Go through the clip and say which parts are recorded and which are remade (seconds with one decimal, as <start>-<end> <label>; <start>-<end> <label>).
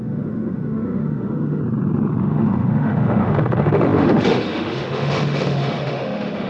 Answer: 0.0-1.6 remade; 1.6-2.2 recorded; 2.2-6.5 remade